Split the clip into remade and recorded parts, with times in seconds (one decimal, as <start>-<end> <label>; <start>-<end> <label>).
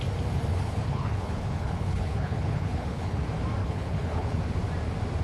0.0-0.5 recorded; 0.5-3.2 remade; 3.2-3.6 recorded; 3.6-4.4 remade; 4.4-5.2 recorded